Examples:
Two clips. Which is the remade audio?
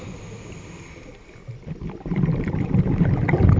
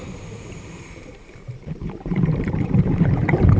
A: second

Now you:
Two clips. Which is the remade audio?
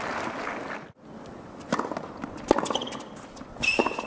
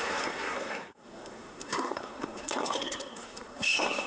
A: second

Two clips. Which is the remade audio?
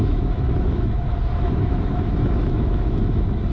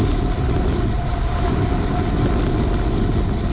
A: first